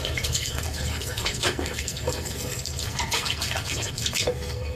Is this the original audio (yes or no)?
no